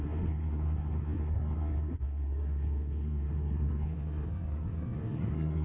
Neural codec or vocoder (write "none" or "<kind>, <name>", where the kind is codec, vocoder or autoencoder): codec, SNAC